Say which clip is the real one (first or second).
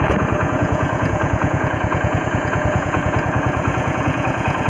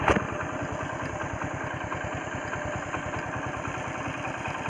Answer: second